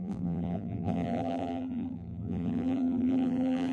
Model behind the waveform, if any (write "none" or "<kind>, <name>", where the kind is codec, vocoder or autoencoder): vocoder, BigVGAN v2